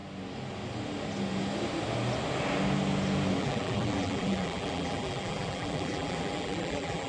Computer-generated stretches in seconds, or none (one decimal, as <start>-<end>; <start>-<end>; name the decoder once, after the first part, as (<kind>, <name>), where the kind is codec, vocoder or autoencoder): 3.4-7.1 (vocoder, BigVGAN v2)